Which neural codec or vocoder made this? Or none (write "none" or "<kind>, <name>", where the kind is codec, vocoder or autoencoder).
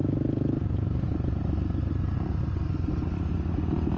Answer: none